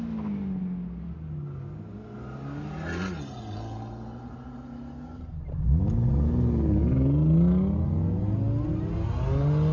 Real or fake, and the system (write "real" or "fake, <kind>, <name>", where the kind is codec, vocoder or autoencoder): real